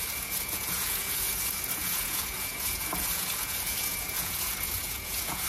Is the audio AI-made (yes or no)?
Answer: yes